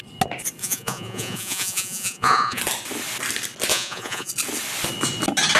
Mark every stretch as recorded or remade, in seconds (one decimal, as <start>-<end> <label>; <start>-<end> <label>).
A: 0.0-0.6 recorded; 0.6-2.6 remade; 2.6-3.7 recorded; 3.7-4.3 remade; 4.3-5.6 recorded